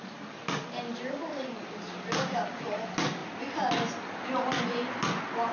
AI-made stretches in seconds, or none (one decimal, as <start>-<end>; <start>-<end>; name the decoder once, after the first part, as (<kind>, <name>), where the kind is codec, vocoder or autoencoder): none